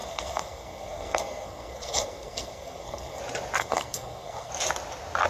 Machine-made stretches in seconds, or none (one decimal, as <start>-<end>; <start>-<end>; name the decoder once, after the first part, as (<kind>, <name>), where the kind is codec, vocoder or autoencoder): 0.0-3.2 (codec, SNAC); 3.6-4.5